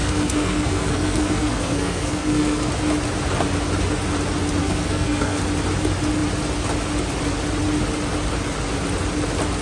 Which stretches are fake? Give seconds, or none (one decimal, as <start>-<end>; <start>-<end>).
0.0-2.7; 4.6-5.4